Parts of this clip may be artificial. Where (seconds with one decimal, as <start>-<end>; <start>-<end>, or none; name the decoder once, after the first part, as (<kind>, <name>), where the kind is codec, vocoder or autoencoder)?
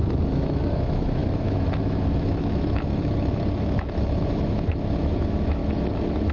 0.0-5.6 (autoencoder, DAC-VAE)